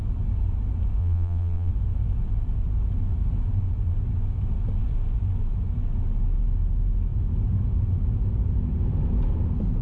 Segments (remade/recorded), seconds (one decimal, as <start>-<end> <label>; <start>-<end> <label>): 0.0-1.0 recorded; 1.0-1.7 remade; 1.7-9.8 recorded